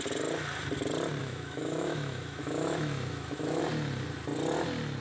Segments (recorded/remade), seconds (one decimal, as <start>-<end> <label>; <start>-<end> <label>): 0.0-1.2 recorded; 1.2-3.6 remade; 3.6-5.0 recorded